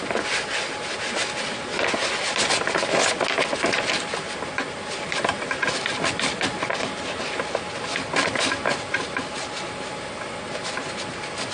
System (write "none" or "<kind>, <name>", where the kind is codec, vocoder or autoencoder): none